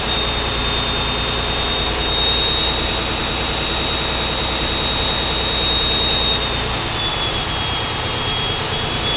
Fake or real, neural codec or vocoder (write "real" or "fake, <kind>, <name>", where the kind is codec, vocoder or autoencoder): real